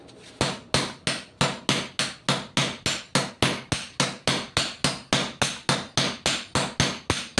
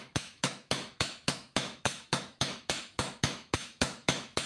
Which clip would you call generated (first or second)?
second